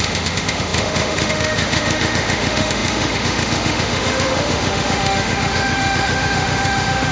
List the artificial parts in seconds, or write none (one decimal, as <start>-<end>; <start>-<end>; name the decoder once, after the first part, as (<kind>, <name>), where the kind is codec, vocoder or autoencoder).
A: 0.0-7.1 (autoencoder, DAC-VAE)